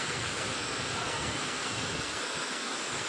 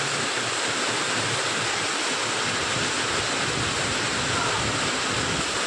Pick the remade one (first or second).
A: first